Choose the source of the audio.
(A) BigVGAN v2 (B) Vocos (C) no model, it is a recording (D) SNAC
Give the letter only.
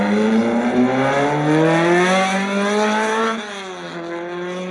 C